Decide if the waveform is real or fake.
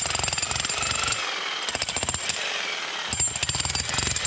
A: real